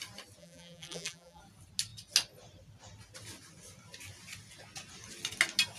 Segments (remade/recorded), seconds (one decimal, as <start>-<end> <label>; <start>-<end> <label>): 0.0-0.4 recorded; 0.4-1.4 remade; 1.4-5.8 recorded